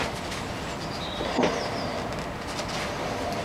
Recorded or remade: recorded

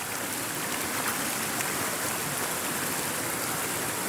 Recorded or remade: recorded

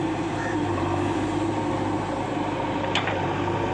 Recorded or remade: remade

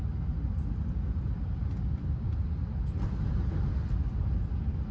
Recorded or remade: recorded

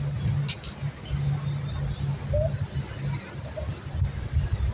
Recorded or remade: recorded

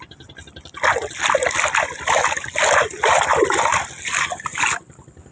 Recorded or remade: recorded